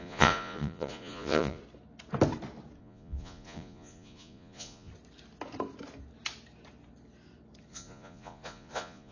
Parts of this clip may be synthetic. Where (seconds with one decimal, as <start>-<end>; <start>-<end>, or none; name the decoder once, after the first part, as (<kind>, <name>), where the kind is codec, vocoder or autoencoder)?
0.0-1.6 (vocoder, Vocos); 2.8-4.9; 7.7-9.1